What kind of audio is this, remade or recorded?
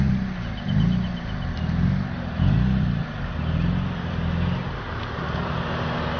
recorded